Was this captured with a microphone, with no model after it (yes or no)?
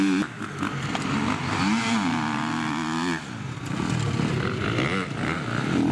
yes